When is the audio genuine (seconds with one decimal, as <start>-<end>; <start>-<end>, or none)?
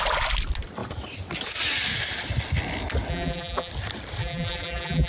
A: 0.0-3.1; 3.7-4.2